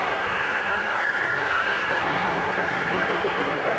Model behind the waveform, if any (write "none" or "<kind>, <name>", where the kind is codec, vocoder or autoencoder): codec, SNAC